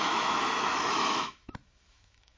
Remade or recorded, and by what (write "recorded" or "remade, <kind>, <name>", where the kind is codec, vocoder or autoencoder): remade, autoencoder, DAC-VAE